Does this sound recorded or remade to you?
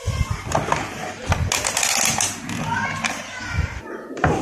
recorded